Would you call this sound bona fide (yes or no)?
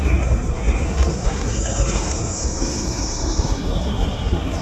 no